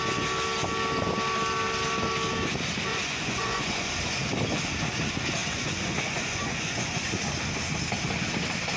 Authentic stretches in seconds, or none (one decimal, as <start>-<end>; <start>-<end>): 0.0-2.9; 3.9-5.4; 7.2-8.8